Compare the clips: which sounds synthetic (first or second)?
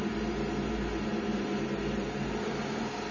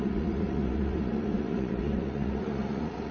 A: second